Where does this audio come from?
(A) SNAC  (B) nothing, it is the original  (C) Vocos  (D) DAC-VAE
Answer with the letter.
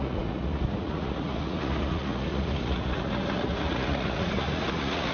C